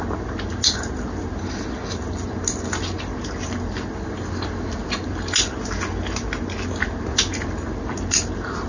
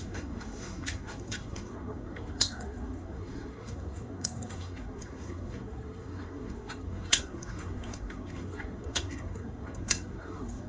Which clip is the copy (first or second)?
second